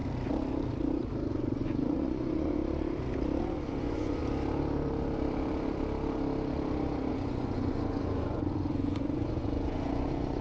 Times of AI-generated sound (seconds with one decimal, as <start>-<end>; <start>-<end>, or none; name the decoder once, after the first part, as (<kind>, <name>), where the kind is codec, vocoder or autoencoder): 1.3-2.6 (vocoder, Vocos); 3.4-4.2; 7.1-10.4